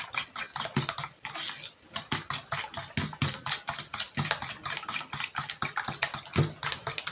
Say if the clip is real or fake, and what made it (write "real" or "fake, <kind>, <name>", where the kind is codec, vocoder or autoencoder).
real